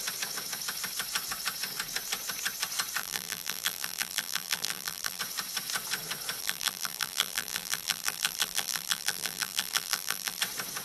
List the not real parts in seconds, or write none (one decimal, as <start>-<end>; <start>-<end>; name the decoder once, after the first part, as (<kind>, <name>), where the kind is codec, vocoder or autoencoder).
3.0-5.2 (vocoder, BigVGAN v2); 6.4-10.4